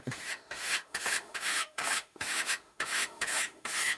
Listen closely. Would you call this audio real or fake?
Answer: fake